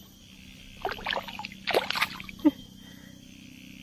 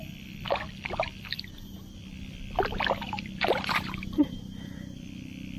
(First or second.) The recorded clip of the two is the first